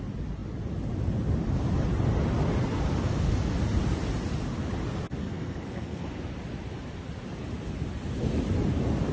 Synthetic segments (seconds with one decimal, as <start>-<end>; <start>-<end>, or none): 5.2-6.2